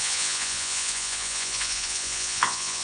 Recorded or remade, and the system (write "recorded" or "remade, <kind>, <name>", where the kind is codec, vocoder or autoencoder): remade, vocoder, Vocos